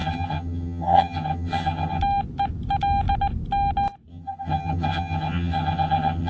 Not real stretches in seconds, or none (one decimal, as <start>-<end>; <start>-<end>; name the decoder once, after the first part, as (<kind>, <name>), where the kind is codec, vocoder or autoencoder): 0.0-2.0 (vocoder, HiFi-GAN); 4.1-6.3